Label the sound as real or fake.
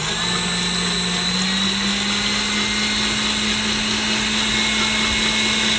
real